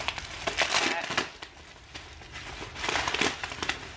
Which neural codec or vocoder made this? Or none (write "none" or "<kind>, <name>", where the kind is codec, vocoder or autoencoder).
none